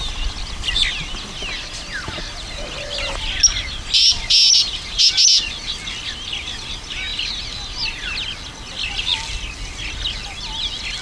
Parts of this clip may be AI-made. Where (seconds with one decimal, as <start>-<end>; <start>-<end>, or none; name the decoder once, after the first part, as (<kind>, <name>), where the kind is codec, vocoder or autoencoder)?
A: none